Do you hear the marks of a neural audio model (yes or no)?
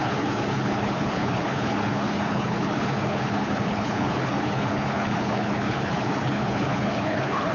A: yes